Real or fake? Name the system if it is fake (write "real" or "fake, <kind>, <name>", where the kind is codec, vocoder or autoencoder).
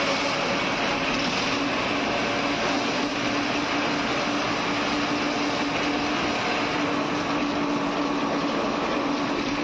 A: real